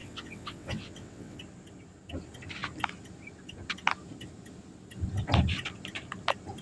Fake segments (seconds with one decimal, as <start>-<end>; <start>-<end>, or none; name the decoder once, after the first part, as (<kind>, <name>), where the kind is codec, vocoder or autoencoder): 0.0-1.4 (vocoder, WaveNeXt)